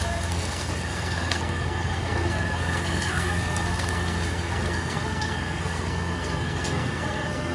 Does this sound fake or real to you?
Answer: fake